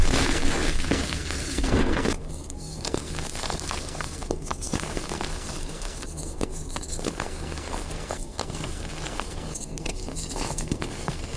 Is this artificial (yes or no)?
yes